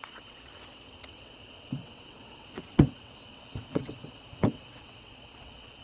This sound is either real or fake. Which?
fake